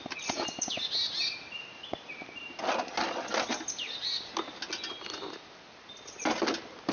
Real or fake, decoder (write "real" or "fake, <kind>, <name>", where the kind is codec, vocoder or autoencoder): real